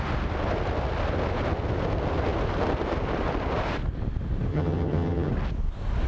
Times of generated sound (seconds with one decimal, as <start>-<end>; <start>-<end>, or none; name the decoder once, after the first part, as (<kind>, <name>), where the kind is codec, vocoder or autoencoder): 4.5-5.3 (vocoder, HiFi-GAN)